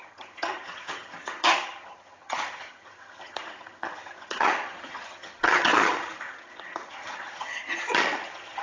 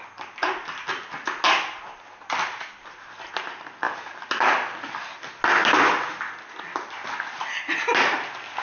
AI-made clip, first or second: first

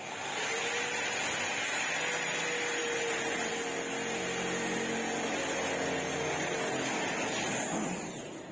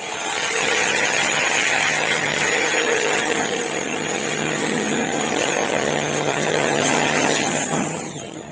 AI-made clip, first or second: second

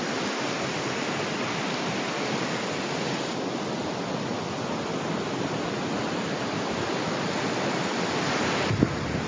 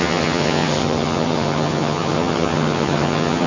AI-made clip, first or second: second